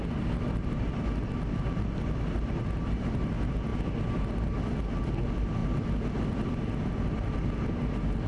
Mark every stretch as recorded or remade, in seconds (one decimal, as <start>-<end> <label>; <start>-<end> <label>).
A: 0.0-8.3 recorded